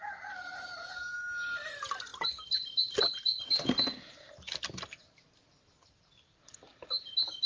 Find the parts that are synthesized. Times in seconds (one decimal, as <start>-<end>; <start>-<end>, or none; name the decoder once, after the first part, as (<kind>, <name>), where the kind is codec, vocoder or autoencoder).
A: none